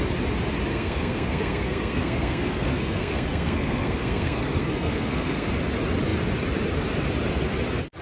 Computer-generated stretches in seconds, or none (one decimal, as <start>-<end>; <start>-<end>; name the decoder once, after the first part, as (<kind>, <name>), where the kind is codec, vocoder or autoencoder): 0.7-5.5 (codec, SNAC)